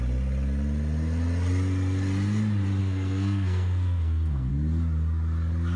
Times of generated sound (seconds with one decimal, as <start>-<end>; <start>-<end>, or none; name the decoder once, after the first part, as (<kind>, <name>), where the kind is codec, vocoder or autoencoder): 2.8-4.5 (codec, SNAC)